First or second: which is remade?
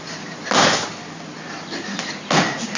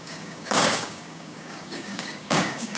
second